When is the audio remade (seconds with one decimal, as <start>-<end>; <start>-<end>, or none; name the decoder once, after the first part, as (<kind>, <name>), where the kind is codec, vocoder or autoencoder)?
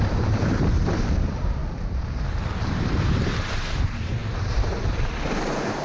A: 0.0-1.6 (vocoder, BigVGAN v2); 2.6-5.8